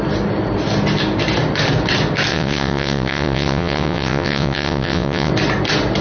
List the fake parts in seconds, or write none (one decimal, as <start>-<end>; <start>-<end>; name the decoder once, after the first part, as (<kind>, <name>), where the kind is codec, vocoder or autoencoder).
2.3-5.3 (vocoder, WaveNeXt)